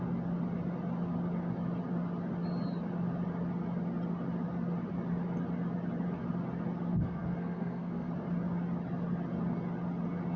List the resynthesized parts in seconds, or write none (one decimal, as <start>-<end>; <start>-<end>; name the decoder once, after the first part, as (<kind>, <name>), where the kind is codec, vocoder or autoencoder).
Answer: 6.9-8.1 (codec, SNAC)